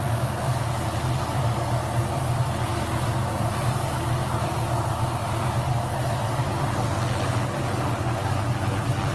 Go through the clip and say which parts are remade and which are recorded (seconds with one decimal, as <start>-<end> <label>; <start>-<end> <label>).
0.0-9.1 recorded